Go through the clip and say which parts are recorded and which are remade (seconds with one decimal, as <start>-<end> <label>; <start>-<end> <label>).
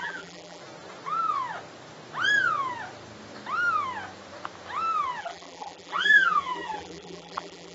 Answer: 0.0-0.6 remade; 0.6-5.2 recorded; 5.2-7.7 remade